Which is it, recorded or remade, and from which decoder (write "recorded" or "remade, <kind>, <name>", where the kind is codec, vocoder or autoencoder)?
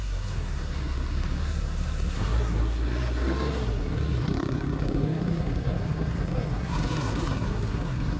remade, codec, SNAC